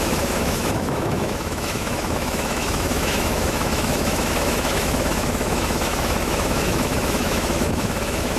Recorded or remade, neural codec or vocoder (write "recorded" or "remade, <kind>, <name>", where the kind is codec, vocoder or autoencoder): remade, autoencoder, DAC-VAE